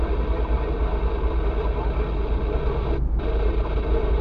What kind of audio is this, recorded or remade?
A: recorded